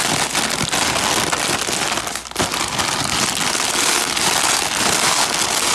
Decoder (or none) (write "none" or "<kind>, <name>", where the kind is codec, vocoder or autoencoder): none